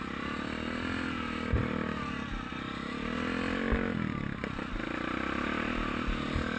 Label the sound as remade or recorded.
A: recorded